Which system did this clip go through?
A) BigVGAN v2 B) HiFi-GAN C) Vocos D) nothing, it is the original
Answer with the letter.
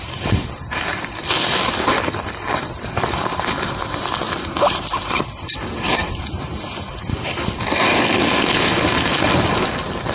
D